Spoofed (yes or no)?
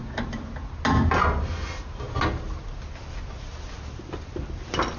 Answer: no